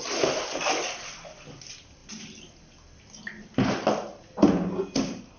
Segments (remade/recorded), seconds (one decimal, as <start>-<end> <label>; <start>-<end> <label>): 0.0-5.4 recorded